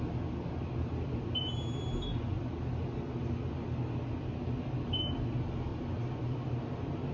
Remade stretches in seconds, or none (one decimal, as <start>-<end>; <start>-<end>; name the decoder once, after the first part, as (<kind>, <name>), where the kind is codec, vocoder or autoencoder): none